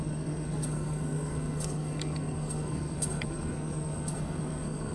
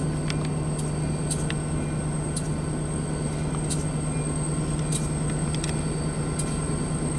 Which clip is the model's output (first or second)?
first